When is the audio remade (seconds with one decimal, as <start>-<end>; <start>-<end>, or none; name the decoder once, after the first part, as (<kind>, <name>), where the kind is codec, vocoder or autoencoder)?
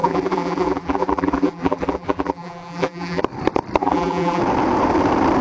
0.0-3.2 (vocoder, BigVGAN v2); 3.8-4.4